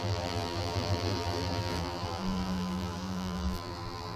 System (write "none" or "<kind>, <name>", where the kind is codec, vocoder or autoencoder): vocoder, BigVGAN v2